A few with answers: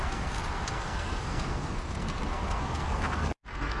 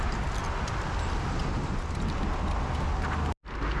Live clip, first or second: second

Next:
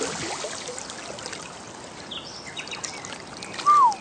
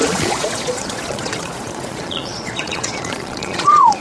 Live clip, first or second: first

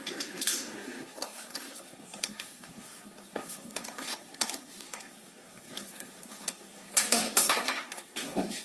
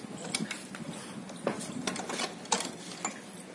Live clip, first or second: second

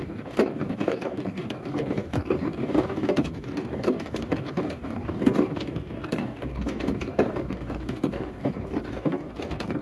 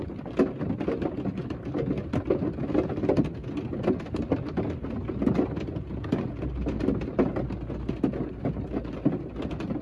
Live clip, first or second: second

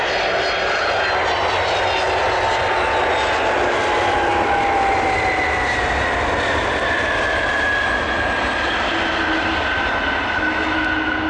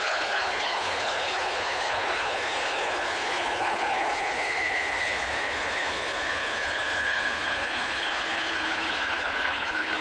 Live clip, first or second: first